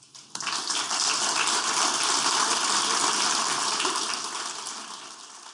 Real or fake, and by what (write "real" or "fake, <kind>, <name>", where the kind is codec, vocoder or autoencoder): real